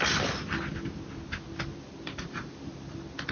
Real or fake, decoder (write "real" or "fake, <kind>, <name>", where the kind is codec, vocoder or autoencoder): real